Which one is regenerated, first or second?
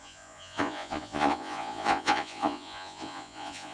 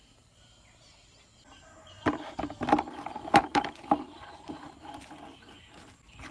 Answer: first